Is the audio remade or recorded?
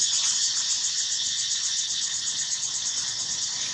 remade